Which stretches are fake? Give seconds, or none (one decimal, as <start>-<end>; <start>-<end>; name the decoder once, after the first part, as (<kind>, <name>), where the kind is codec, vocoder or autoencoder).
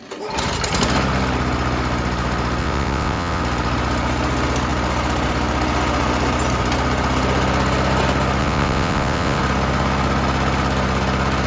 2.6-3.4 (vocoder, WaveNeXt); 8.4-9.4